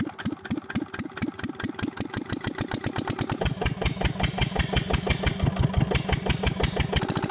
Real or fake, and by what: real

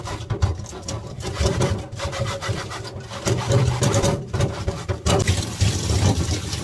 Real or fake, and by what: fake, vocoder, BigVGAN v2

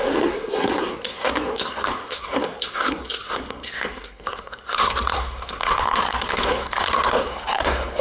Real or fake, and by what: fake, codec, SNAC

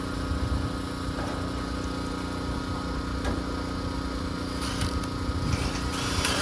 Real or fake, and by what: real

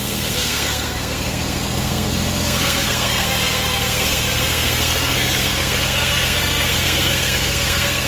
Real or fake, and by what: fake, codec, SNAC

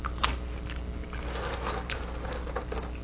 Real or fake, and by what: real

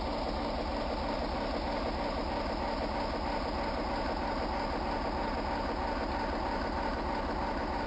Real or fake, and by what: real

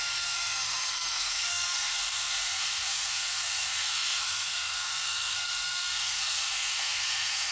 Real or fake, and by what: fake, codec, SNAC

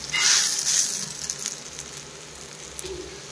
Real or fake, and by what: real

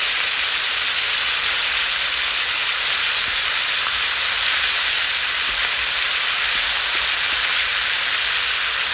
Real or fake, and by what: real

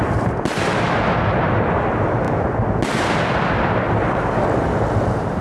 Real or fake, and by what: real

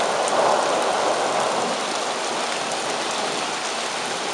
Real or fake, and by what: real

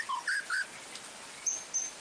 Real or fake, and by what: real